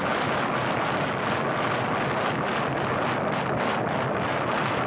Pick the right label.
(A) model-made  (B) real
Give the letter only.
B